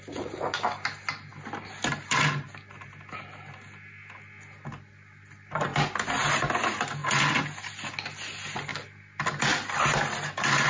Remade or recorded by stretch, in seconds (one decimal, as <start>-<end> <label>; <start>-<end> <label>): 0.0-10.7 recorded